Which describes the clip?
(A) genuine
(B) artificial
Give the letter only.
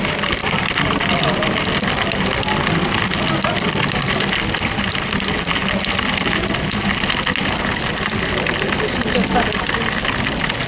A